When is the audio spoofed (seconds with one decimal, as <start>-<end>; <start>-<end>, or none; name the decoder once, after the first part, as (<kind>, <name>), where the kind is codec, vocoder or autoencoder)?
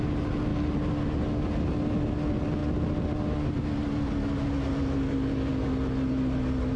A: none